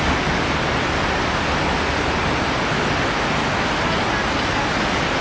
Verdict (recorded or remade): recorded